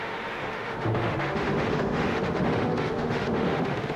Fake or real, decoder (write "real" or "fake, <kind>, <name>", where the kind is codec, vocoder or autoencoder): fake, autoencoder, DAC-VAE